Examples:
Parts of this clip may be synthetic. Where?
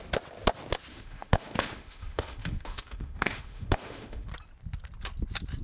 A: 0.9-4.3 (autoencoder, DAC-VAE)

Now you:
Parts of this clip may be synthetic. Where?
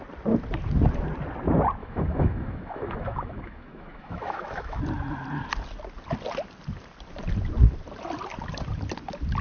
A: 1.8-4.8 (autoencoder, DAC-VAE)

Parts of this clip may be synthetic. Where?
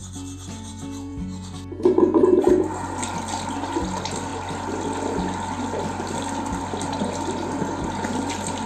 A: none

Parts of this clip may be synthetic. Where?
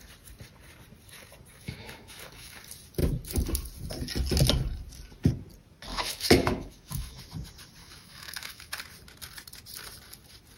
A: 1.5-2.6 (autoencoder, DAC-VAE); 5.9-7.2; 7.8-8.7